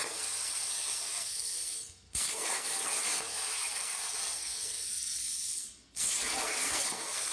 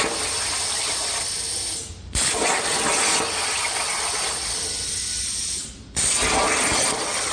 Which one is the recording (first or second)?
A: second